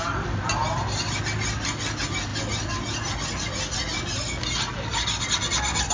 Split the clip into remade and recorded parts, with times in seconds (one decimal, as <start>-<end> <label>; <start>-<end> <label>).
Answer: 0.0-5.9 recorded